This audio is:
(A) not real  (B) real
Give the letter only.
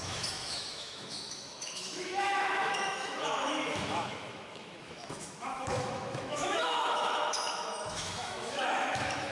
A